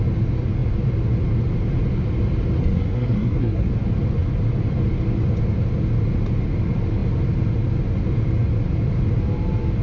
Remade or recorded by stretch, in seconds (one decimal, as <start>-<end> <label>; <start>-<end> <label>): 0.0-2.6 recorded; 2.6-3.7 remade; 3.7-9.8 recorded